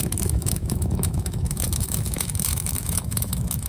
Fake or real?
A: fake